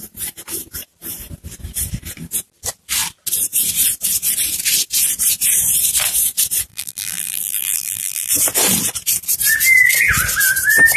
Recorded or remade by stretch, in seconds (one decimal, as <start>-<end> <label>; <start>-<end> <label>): 0.0-6.7 recorded; 6.7-8.3 remade; 8.3-11.0 recorded